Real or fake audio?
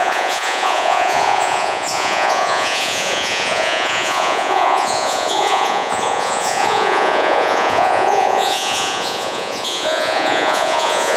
fake